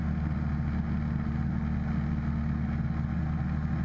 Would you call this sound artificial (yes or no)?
no